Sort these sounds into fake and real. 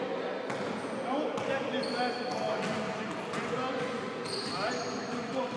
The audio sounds real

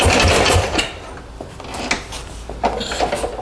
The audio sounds real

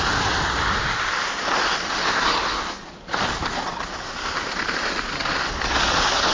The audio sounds real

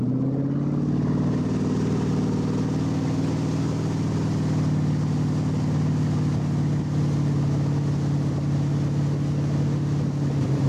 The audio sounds real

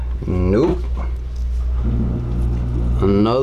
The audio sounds real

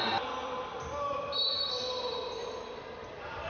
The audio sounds fake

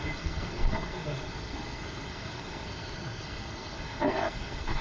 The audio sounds fake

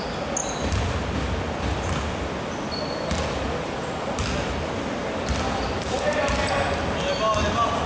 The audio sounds real